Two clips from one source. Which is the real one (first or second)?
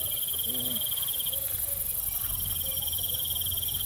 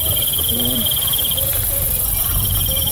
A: first